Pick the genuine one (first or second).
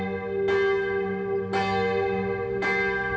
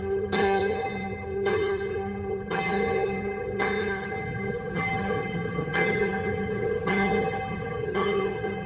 first